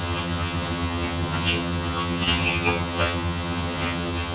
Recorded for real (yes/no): no